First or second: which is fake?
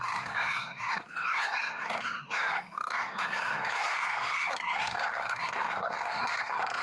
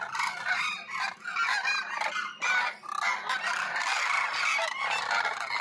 first